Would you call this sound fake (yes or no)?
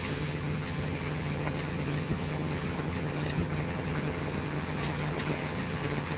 yes